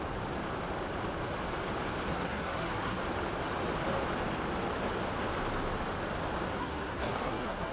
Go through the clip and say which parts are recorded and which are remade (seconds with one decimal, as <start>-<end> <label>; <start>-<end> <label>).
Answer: 0.0-2.1 recorded; 2.1-3.0 remade; 3.0-6.6 recorded; 6.6-7.7 remade